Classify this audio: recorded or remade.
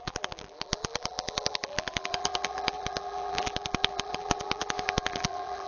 remade